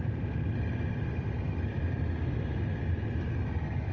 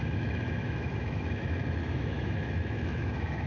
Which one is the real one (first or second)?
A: first